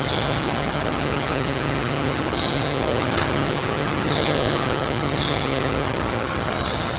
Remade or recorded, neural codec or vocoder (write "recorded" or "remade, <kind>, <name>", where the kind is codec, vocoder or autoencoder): remade, vocoder, HiFi-GAN